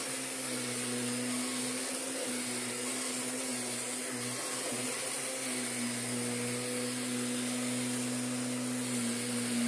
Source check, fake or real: real